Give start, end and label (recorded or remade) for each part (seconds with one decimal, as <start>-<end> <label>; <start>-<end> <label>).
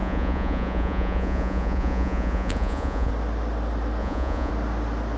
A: 0.0-3.1 remade; 3.1-4.0 recorded; 4.0-4.5 remade; 4.5-5.2 recorded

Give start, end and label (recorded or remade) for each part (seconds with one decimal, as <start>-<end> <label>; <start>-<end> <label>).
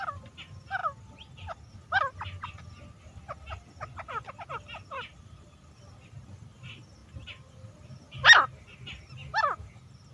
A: 0.0-10.1 recorded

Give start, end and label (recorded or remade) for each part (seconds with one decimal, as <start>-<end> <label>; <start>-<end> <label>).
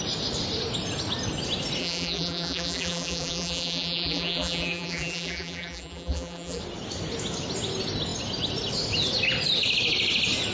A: 0.0-1.8 recorded; 1.8-6.6 remade; 6.6-10.5 recorded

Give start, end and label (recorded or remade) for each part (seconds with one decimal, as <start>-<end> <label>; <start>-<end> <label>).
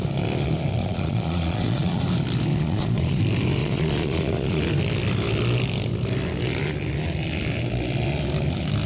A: 0.0-0.8 recorded; 0.8-2.0 remade; 2.0-2.5 recorded; 2.5-3.2 remade; 3.2-3.6 recorded; 3.6-4.6 remade; 4.6-8.9 recorded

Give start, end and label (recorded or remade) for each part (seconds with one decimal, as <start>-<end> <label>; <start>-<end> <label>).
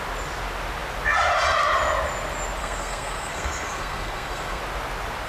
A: 0.0-2.6 recorded; 2.6-4.6 remade; 4.6-5.3 recorded